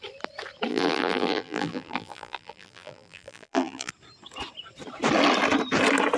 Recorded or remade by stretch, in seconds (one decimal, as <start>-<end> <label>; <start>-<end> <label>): 0.0-0.7 recorded; 0.7-3.9 remade; 3.9-6.2 recorded